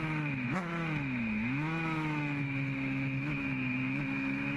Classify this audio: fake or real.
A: fake